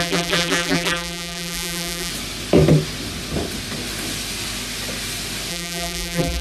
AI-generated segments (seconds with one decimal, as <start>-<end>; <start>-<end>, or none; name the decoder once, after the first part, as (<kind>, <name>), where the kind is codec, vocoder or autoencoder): 0.0-2.1 (vocoder, BigVGAN v2); 5.5-6.4